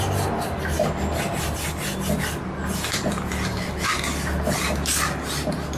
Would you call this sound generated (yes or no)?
no